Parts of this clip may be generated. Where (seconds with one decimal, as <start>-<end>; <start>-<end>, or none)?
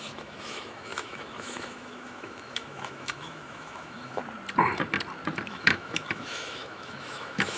0.0-4.2; 5.5-7.6